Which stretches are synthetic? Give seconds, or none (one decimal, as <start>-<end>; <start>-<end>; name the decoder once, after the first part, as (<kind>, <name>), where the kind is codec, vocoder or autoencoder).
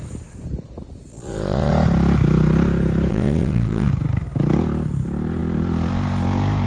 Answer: 1.1-1.7 (vocoder, Vocos); 3.1-3.9